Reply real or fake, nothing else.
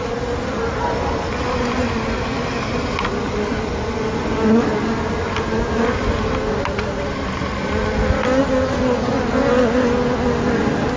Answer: real